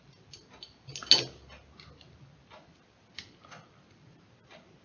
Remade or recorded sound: recorded